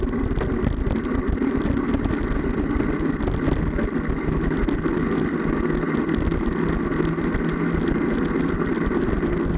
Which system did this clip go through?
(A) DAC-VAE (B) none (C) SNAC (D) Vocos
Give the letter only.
B